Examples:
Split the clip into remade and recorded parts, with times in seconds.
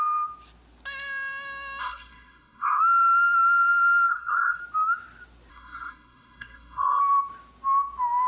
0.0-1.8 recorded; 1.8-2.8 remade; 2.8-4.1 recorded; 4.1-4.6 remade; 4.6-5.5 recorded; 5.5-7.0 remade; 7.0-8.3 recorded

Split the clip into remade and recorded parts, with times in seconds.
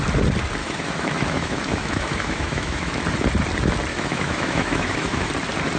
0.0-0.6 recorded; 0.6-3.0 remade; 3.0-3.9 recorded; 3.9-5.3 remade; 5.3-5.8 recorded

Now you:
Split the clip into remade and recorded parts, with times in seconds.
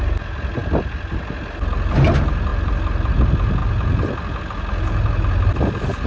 0.0-6.1 recorded